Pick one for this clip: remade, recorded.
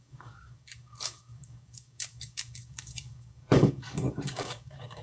remade